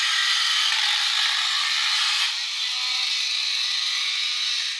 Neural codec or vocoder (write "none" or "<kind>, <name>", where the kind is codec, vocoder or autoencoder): none